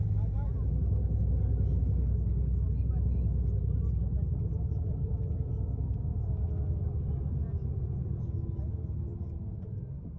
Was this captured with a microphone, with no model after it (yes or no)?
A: yes